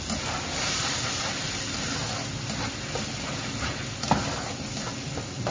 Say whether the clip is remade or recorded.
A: recorded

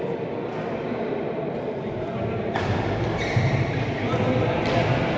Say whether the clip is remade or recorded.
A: recorded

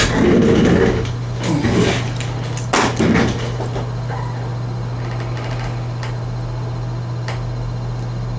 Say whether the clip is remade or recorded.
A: recorded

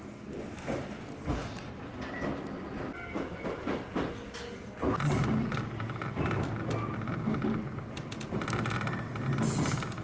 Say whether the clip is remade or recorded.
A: recorded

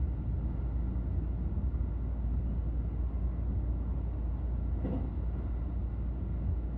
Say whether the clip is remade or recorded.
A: recorded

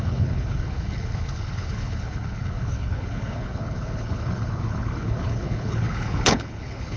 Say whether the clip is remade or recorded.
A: remade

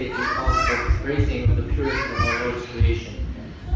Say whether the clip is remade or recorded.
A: recorded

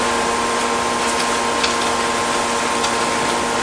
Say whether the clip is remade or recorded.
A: recorded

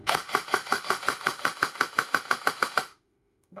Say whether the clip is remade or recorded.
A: remade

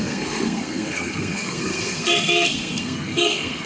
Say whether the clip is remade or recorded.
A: remade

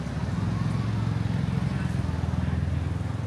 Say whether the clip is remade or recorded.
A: recorded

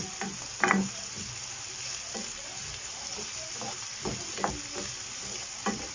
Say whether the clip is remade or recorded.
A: recorded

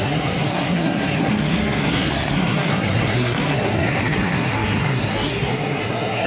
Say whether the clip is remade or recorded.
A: remade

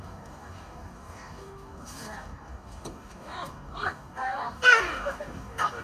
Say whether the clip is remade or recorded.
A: remade